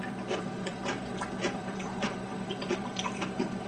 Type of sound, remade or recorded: remade